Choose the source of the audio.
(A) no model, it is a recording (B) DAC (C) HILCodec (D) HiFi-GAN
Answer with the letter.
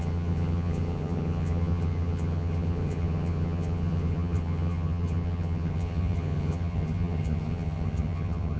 D